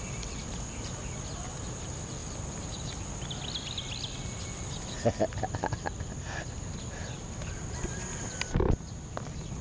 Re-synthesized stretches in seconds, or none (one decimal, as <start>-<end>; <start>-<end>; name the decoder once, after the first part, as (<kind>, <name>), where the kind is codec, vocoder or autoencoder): none